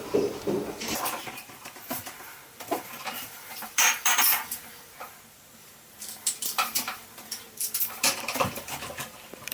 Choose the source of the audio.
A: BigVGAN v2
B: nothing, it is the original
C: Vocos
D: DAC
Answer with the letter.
A